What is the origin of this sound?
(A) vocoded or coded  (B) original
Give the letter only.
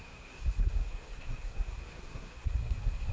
A